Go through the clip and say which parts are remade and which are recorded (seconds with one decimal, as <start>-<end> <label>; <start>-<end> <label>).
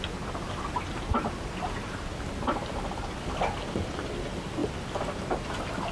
0.0-5.9 recorded